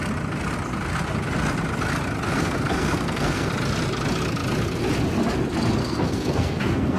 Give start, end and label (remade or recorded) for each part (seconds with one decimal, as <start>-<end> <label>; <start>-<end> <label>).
0.0-2.3 recorded; 2.3-3.5 remade; 3.5-5.8 recorded; 5.8-7.0 remade